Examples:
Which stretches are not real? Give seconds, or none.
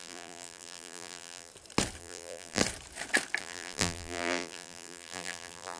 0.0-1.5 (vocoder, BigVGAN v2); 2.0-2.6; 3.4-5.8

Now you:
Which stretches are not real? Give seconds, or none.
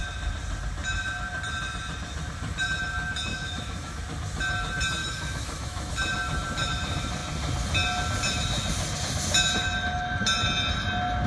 3.3-4.0 (autoencoder, DAC-VAE); 5.0-5.9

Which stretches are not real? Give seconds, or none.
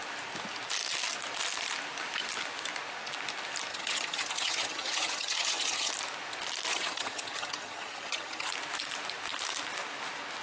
3.7-5.9 (vocoder, HiFi-GAN); 6.7-8.5